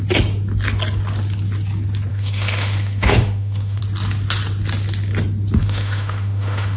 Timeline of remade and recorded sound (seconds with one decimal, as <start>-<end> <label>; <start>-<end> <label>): 0.0-2.1 recorded; 2.1-3.8 remade; 3.8-5.6 recorded; 5.6-6.8 remade